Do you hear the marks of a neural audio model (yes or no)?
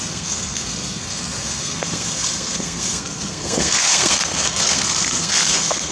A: yes